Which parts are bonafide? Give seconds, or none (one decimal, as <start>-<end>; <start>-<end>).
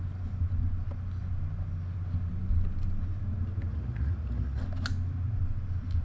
0.0-3.7; 4.6-6.0